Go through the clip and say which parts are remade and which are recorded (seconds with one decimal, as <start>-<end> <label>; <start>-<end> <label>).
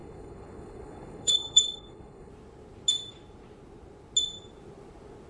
0.0-2.3 remade; 2.3-5.3 recorded